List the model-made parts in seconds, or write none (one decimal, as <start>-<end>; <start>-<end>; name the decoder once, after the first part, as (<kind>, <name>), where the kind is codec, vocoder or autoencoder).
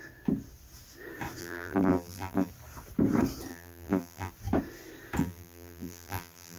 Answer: 1.4-2.5 (vocoder, BigVGAN v2); 3.5-4.3; 5.2-6.6